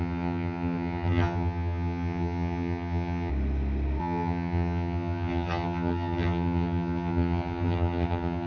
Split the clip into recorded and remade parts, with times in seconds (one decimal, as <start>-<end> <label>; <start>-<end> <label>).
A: 0.0-3.3 remade; 3.3-4.0 recorded; 4.0-8.5 remade